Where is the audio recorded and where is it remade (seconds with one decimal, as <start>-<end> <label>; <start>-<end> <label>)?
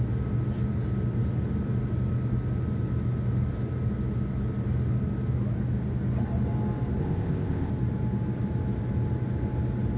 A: 0.0-7.0 recorded; 7.0-7.7 remade; 7.7-10.0 recorded